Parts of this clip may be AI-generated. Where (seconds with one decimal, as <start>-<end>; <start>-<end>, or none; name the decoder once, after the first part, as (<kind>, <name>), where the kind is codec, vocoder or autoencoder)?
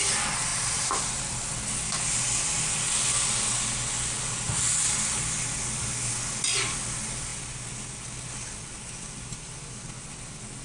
0.5-1.5 (vocoder, BigVGAN v2)